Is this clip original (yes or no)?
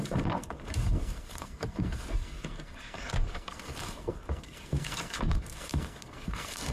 no